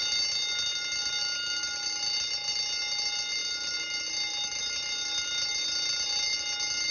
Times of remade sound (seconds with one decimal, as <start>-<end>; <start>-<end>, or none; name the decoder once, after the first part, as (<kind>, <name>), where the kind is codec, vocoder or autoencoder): none